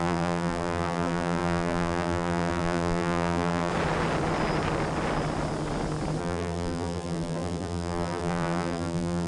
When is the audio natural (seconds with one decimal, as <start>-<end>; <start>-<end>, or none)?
3.7-6.2